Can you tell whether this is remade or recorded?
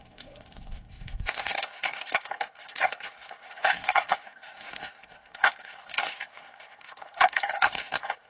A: remade